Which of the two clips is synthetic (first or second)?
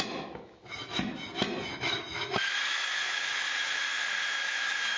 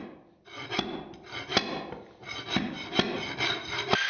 first